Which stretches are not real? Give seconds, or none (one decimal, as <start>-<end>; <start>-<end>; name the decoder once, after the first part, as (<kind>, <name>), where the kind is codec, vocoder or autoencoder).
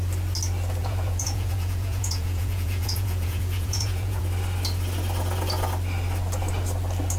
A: 0.8-4.2 (vocoder, Vocos)